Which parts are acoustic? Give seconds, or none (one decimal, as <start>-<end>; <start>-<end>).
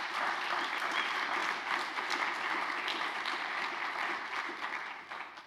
0.0-5.5